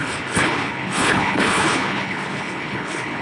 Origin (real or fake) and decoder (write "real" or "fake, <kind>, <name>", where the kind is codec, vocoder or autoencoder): fake, codec, HILCodec